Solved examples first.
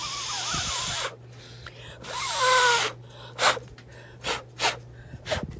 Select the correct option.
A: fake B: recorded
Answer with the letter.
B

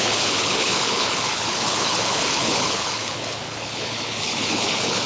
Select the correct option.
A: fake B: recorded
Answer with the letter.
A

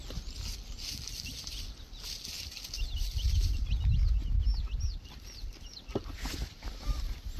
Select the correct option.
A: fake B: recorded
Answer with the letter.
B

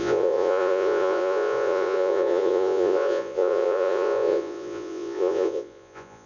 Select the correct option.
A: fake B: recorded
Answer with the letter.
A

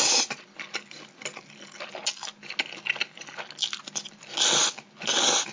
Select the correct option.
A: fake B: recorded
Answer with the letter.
B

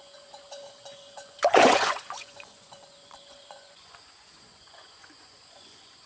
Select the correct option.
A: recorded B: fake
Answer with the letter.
B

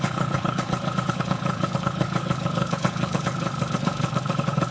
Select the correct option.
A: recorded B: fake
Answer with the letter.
B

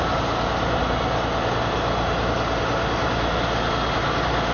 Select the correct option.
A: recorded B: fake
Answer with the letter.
A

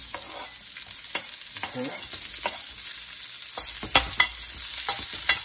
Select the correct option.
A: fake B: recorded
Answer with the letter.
B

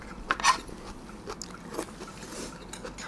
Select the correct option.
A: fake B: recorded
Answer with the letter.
B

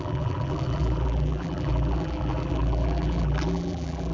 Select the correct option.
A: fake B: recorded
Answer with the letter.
A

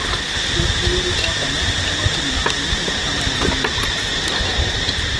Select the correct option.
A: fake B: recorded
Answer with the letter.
B